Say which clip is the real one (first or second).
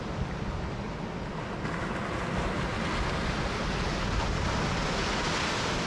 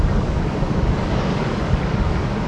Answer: first